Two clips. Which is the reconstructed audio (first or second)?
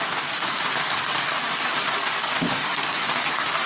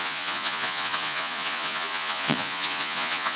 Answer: second